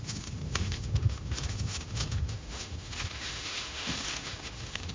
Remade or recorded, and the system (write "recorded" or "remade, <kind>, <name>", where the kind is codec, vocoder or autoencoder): remade, autoencoder, DAC-VAE